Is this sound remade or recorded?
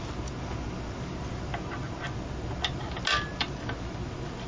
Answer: recorded